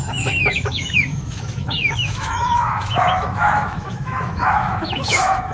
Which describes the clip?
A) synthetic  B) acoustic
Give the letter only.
A